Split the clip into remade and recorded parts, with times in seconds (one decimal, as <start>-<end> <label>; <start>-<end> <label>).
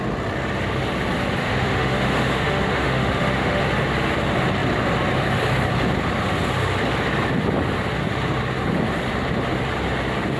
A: 0.0-1.4 recorded; 1.4-3.6 remade; 3.6-10.4 recorded